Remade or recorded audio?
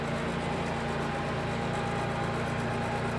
recorded